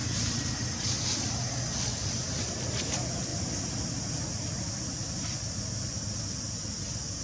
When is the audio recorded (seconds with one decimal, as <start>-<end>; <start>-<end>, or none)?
0.0-7.2